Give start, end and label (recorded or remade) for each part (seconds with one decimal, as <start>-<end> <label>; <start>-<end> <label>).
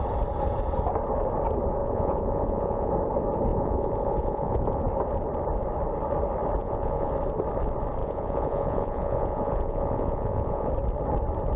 0.0-1.8 recorded; 1.8-2.9 remade; 2.9-3.5 recorded; 3.5-4.9 remade; 4.9-6.6 recorded; 6.6-7.1 remade; 7.1-8.0 recorded; 8.0-10.7 remade; 10.7-11.6 recorded